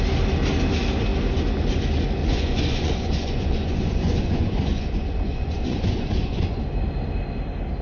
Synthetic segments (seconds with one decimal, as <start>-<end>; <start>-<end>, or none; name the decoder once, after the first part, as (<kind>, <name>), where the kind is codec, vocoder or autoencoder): 2.2-6.6 (vocoder, Vocos)